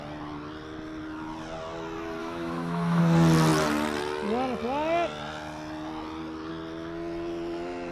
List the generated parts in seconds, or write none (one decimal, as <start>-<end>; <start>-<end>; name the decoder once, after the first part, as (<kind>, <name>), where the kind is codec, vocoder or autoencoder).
2.2-3.0 (autoencoder, DAC-VAE)